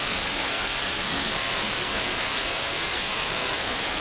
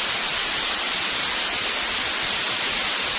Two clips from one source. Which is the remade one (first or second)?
first